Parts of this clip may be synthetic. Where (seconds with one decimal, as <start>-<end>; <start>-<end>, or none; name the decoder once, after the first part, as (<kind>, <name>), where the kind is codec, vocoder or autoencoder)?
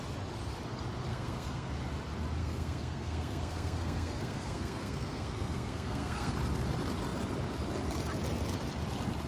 1.1-1.7 (codec, SNAC); 2.4-6.3